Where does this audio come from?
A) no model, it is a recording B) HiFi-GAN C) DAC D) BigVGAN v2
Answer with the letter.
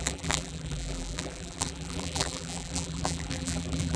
D